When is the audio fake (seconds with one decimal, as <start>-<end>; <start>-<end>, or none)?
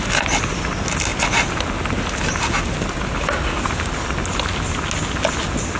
none